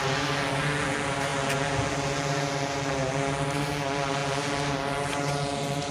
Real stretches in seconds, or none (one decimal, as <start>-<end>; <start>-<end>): 0.0-5.9